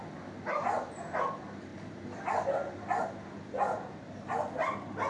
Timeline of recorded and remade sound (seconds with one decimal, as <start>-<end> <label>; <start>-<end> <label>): 0.0-5.1 recorded